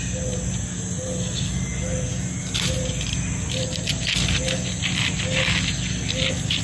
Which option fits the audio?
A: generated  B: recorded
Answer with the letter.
B